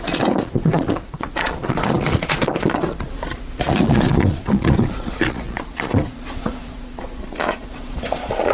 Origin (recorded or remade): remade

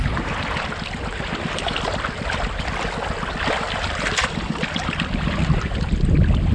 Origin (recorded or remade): recorded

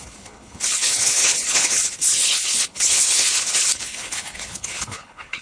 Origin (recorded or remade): remade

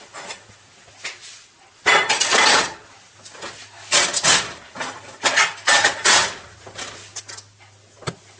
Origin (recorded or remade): recorded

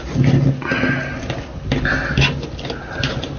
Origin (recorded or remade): recorded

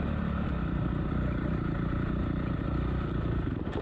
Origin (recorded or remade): remade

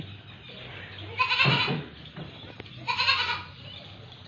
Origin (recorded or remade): recorded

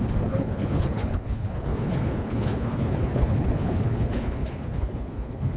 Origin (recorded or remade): remade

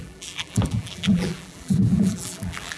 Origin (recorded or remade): remade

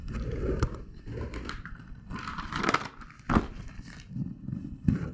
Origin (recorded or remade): remade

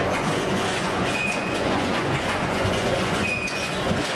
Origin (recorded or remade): remade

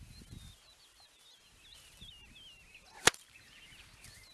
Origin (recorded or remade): recorded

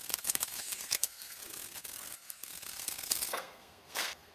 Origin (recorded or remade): remade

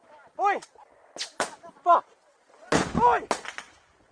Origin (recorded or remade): recorded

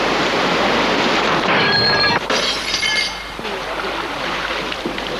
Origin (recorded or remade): recorded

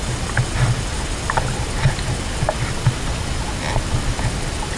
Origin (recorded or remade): recorded